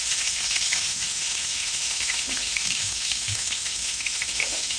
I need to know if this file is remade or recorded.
remade